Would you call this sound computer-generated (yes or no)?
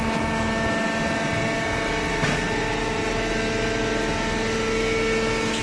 no